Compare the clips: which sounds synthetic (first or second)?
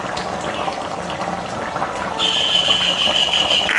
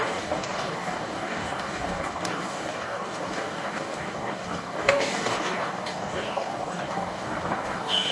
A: second